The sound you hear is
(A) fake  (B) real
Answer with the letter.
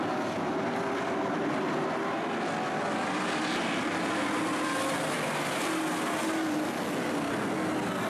B